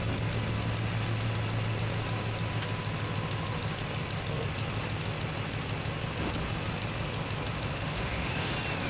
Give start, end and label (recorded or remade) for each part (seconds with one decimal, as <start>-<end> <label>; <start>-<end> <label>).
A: 0.0-7.7 recorded; 7.7-8.5 remade; 8.5-8.9 recorded